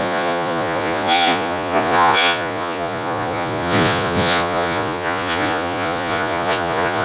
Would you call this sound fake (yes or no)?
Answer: yes